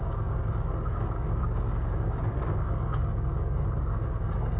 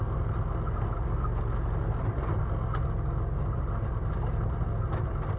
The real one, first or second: second